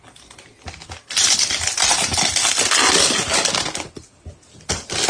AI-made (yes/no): no